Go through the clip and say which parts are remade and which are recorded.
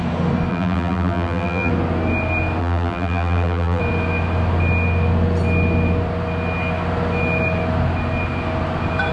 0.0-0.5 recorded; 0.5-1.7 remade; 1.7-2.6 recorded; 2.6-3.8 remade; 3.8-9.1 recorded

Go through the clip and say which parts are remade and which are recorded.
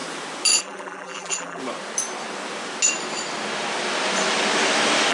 0.0-0.6 recorded; 0.6-1.6 remade; 1.6-5.1 recorded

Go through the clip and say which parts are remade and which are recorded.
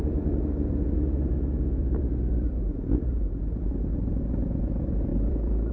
0.0-1.8 recorded; 1.8-3.4 remade; 3.4-5.1 recorded; 5.1-5.7 remade